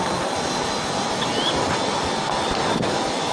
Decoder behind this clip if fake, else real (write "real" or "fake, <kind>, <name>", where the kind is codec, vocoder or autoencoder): real